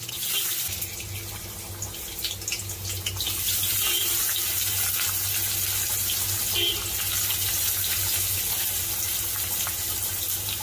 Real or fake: real